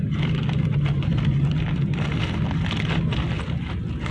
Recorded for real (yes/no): yes